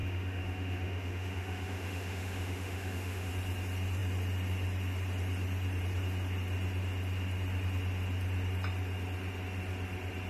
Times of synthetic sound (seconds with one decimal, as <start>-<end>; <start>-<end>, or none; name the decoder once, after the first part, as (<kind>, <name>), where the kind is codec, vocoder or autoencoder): 0.0-3.3 (autoencoder, DAC-VAE)